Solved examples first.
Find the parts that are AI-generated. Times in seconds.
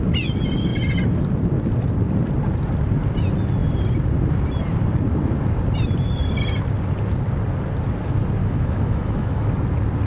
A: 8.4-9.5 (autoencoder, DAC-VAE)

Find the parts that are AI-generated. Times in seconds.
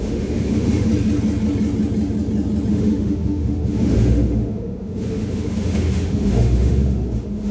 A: 0.0-0.9 (autoencoder, DAC-VAE); 2.7-7.5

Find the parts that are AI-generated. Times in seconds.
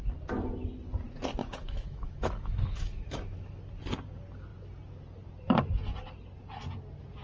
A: 1.4-3.6 (autoencoder, DAC-VAE)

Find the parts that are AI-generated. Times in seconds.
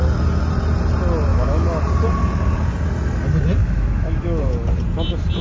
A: 1.3-1.8 (autoencoder, DAC-VAE); 3.6-4.6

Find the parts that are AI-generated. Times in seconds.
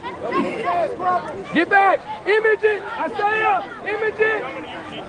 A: 1.4-3.7 (autoencoder, DAC-VAE)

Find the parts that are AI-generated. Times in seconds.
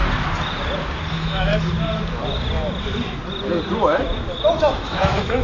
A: 1.1-1.5 (autoencoder, DAC-VAE); 4.7-5.4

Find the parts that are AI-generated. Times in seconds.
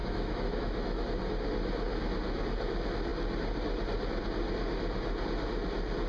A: 0.0-1.0 (autoencoder, DAC-VAE)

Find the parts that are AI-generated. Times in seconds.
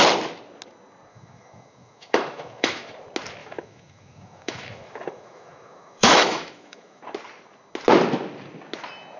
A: 1.1-2.9 (autoencoder, DAC-VAE); 3.4-7.0